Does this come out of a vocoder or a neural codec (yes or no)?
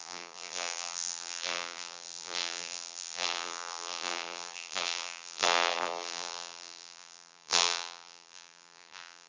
yes